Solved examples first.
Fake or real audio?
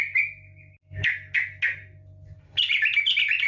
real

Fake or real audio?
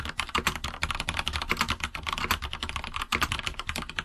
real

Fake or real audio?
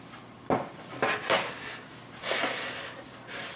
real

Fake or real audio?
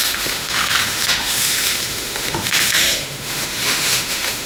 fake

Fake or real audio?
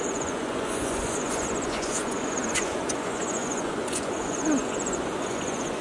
fake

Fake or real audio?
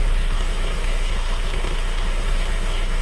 fake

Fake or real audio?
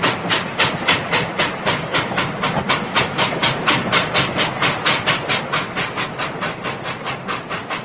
real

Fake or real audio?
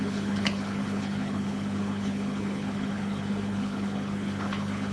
fake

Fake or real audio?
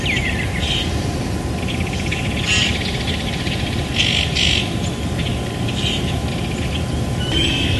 real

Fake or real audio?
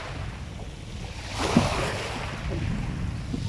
real